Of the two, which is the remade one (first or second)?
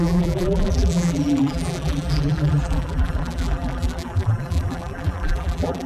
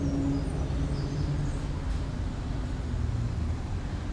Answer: first